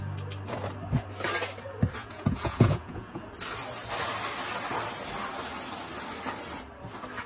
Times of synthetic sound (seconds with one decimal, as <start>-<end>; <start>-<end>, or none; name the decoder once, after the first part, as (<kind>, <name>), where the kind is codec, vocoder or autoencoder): 2.0-3.2 (vocoder, Vocos)